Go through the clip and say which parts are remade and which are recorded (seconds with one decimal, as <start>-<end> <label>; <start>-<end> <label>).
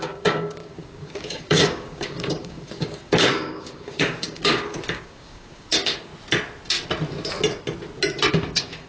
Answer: 0.0-6.1 remade; 6.1-8.3 recorded; 8.3-8.9 remade